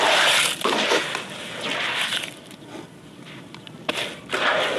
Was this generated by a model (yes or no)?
no